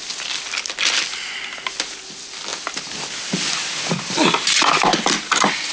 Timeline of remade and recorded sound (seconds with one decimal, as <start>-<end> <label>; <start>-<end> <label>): 0.0-5.7 recorded